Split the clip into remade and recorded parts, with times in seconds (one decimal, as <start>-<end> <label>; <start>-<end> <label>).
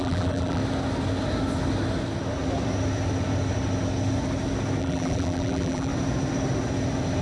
0.0-0.6 remade; 0.6-4.8 recorded; 4.8-5.9 remade; 5.9-7.2 recorded